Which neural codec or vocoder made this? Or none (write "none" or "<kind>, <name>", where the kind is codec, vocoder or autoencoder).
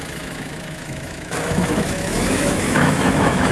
autoencoder, DAC-VAE